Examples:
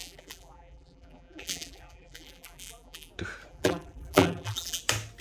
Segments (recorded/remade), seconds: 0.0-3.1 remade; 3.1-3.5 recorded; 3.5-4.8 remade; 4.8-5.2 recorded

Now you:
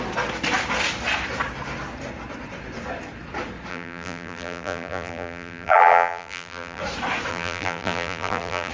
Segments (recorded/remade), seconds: 0.0-3.7 recorded; 3.7-6.8 remade; 6.8-7.3 recorded; 7.3-8.7 remade

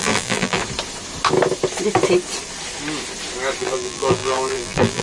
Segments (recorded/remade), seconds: 0.0-0.6 remade; 0.6-3.6 recorded; 3.6-5.0 remade

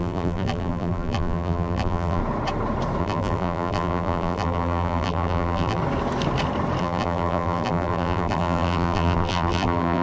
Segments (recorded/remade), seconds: 0.0-2.2 remade; 2.2-3.0 recorded; 3.0-5.8 remade; 5.8-6.8 recorded; 6.8-10.0 remade

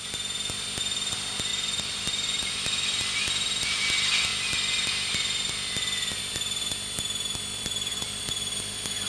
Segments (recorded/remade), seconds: 0.0-1.5 recorded; 1.5-2.5 remade; 2.5-7.5 recorded; 7.5-8.6 remade; 8.6-9.1 recorded

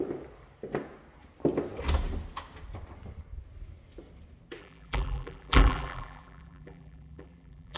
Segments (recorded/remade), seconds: 0.0-4.6 recorded; 4.6-7.8 remade